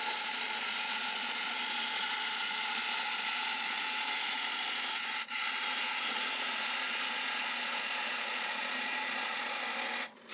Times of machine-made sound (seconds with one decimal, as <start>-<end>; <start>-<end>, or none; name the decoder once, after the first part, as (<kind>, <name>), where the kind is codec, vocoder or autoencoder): 0.0-9.6 (vocoder, Vocos)